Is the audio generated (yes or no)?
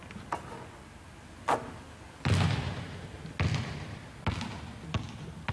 no